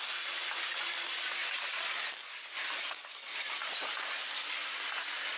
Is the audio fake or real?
real